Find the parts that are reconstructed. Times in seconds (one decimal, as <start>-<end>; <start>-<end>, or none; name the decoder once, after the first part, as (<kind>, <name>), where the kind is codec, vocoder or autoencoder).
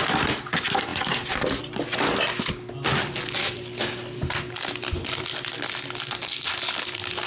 none